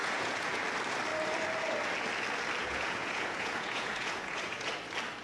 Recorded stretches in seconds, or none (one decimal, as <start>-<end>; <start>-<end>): 0.6-2.6; 4.7-5.2